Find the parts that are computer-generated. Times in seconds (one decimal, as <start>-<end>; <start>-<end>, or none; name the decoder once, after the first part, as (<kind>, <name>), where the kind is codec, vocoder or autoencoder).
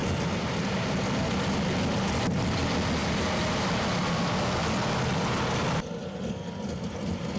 none